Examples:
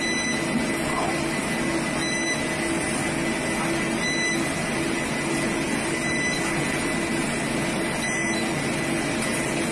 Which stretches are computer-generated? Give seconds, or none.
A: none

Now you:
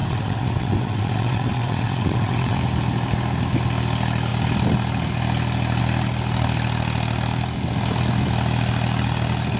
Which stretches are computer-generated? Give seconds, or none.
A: 0.0-2.6

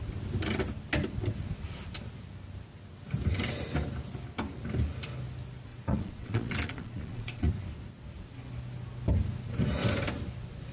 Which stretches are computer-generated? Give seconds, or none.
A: 5.7-7.5